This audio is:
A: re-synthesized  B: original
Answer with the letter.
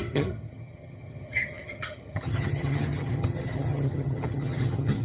A